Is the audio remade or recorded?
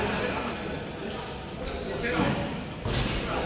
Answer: recorded